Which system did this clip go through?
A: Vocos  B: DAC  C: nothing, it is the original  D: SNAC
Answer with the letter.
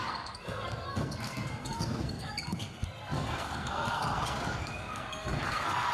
D